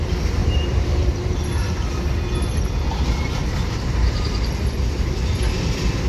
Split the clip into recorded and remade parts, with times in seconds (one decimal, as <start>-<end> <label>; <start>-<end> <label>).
0.0-0.4 recorded; 0.4-2.1 remade; 2.1-3.4 recorded; 3.4-4.2 remade; 4.2-6.1 recorded